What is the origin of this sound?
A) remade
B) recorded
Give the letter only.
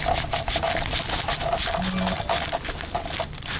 B